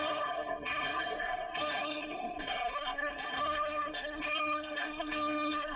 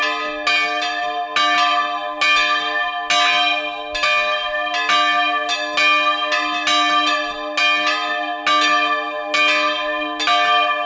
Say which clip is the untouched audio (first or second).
second